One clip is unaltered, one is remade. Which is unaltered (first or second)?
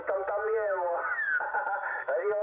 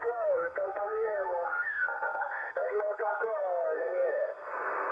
first